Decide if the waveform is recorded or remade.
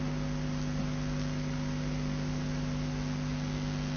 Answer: recorded